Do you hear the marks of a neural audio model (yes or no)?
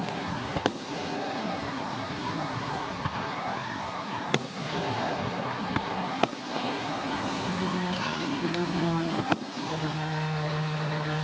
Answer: yes